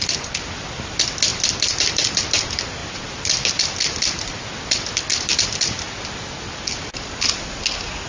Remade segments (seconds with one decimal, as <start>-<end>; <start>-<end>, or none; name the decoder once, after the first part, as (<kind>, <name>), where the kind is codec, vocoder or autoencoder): none